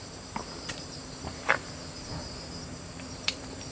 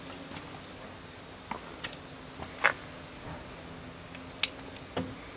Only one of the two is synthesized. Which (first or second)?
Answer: first